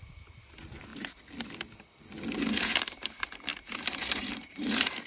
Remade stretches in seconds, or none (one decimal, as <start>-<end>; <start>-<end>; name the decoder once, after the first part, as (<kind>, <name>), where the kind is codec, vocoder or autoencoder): 0.0-0.9 (vocoder, BigVGAN v2); 2.5-5.1